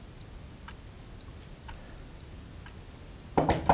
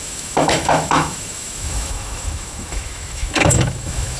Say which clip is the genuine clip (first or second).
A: first